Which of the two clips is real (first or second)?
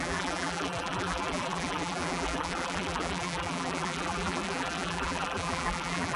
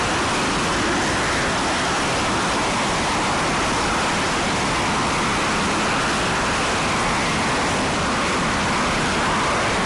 second